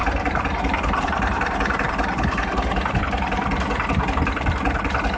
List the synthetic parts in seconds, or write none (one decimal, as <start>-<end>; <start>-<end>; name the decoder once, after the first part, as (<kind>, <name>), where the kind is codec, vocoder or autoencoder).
0.0-3.0 (vocoder, BigVGAN v2)